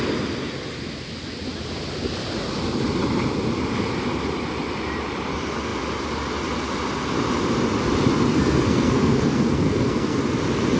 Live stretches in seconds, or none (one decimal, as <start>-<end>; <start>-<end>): 0.0-8.3; 10.2-10.8